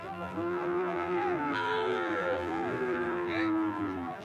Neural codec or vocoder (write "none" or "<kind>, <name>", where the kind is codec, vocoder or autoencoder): vocoder, BigVGAN v2